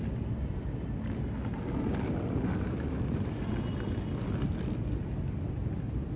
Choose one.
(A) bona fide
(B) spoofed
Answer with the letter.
A